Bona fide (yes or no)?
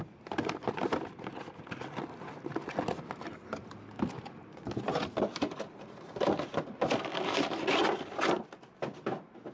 yes